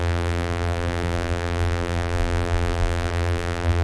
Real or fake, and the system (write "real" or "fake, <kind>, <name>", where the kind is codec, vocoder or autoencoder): fake, vocoder, BigVGAN v2